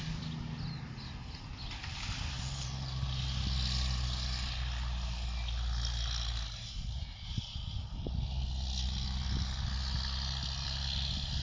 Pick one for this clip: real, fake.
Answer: real